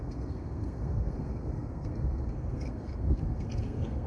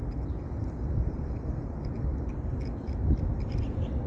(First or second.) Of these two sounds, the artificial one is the first